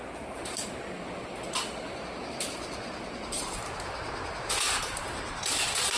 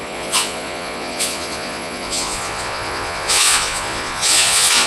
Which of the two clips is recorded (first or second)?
first